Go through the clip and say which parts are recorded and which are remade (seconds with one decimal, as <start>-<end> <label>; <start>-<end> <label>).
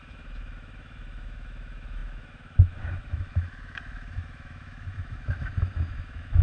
0.0-6.4 remade